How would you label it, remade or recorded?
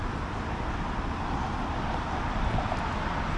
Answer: remade